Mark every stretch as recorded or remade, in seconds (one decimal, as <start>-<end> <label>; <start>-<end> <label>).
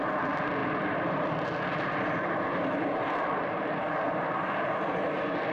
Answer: 0.0-0.6 recorded; 0.6-3.9 remade; 3.9-5.5 recorded